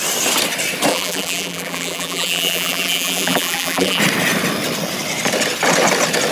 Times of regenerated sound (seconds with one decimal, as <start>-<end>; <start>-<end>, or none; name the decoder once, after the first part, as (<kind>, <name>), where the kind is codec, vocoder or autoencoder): 0.9-4.0 (vocoder, BigVGAN v2)